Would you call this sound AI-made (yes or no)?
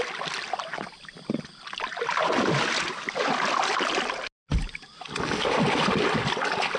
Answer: no